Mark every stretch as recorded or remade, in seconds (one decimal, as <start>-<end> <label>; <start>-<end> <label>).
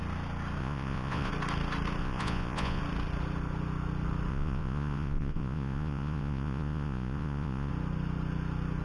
0.0-0.6 recorded; 0.6-1.3 remade; 1.3-2.0 recorded; 2.0-2.8 remade; 2.8-4.3 recorded; 4.3-7.7 remade; 7.7-8.8 recorded